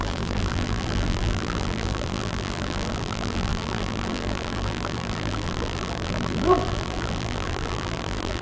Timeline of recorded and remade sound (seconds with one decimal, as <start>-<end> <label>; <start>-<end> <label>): 0.0-8.4 remade